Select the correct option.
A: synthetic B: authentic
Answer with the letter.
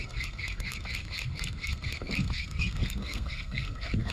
A